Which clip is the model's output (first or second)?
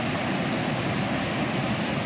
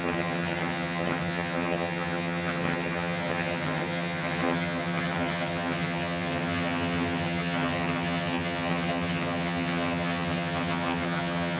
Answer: second